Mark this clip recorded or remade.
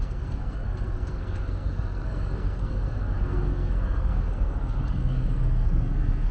remade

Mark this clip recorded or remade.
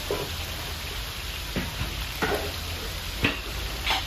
recorded